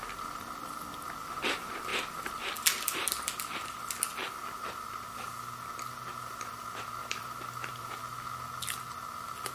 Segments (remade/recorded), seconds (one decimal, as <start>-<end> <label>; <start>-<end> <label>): 0.0-7.0 recorded; 7.0-8.0 remade; 8.0-9.5 recorded